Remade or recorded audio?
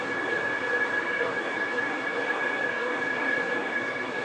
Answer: remade